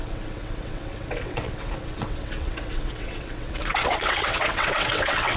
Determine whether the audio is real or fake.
fake